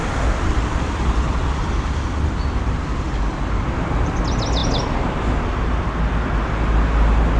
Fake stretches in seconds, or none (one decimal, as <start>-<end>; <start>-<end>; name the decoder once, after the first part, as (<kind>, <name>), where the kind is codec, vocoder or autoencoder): 0.0-2.1 (vocoder, BigVGAN v2)

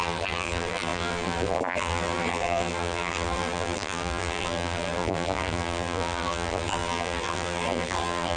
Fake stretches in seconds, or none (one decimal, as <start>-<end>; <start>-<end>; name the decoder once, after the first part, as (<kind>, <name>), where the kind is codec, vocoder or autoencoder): 0.0-8.4 (vocoder, BigVGAN v2)

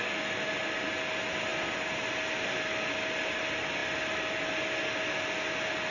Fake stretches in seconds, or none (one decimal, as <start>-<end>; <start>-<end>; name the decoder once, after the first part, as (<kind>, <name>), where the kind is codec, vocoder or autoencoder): none

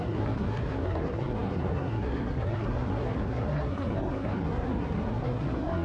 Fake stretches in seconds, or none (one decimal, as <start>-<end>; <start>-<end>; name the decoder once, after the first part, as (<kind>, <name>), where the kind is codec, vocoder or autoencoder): 0.0-5.8 (codec, SNAC)